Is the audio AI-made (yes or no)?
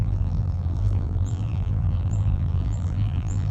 yes